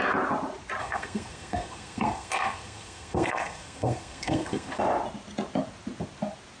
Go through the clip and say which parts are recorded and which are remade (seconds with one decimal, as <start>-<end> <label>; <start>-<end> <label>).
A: 0.0-0.8 recorded; 0.8-4.8 remade; 4.8-6.6 recorded